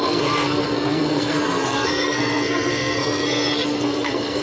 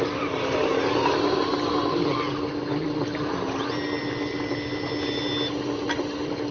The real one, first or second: second